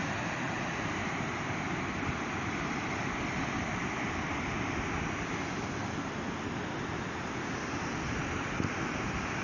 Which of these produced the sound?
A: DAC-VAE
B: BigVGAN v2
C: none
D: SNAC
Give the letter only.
C